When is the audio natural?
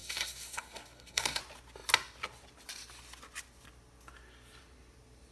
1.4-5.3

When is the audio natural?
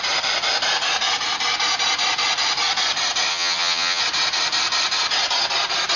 0.0-3.3; 4.0-6.0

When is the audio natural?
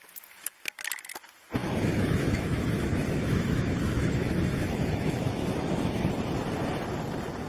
0.0-1.6; 6.1-7.5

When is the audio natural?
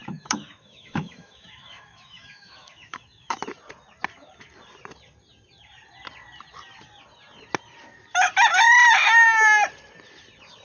3.4-10.6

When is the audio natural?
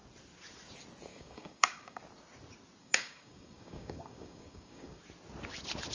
0.0-1.1; 2.0-2.8; 5.0-5.9